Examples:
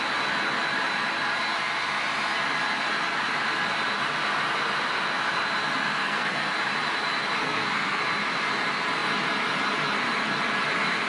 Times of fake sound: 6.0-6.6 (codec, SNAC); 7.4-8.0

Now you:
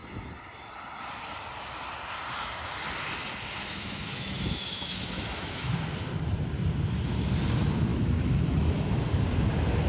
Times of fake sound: 3.6-5.7 (autoencoder, DAC-VAE); 7.9-9.0

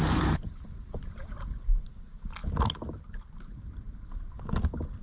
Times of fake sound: none

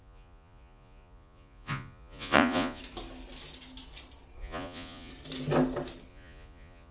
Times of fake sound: 0.0-2.8 (vocoder, Vocos); 4.4-5.1; 6.1-6.9

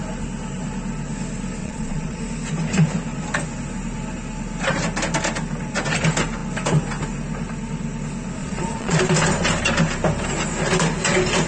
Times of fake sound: 1.6-2.2 (vocoder, Vocos); 8.4-9.0

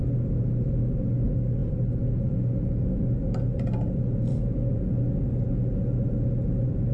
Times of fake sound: none

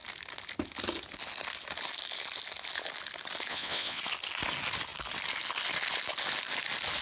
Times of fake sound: 3.5-4.0 (vocoder, WaveNeXt)